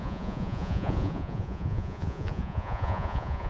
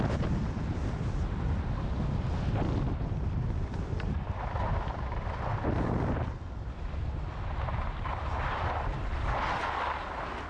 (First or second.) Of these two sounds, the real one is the second